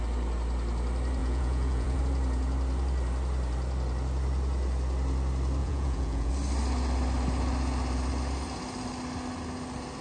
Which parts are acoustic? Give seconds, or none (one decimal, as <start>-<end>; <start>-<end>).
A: 0.0-1.2; 2.0-5.6; 6.3-10.0